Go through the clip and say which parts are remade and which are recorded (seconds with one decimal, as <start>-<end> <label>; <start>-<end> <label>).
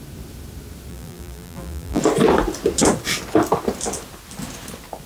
0.0-0.9 recorded; 0.9-2.0 remade; 2.0-5.1 recorded